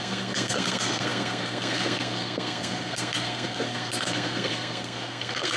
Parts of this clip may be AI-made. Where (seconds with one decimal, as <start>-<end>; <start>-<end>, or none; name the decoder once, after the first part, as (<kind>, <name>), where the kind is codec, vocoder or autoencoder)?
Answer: 0.0-5.6 (codec, SNAC)